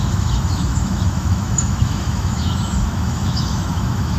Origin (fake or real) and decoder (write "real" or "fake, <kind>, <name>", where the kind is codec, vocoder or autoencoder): fake, autoencoder, DAC-VAE